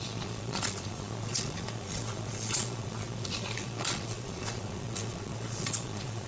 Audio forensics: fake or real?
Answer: fake